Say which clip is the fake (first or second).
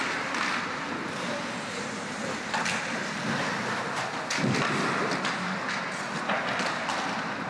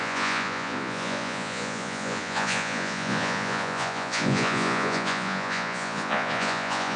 second